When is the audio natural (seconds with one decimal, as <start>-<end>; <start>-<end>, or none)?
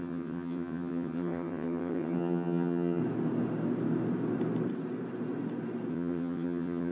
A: 3.0-5.9